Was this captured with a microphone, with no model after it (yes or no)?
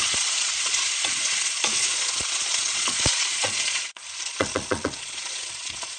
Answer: no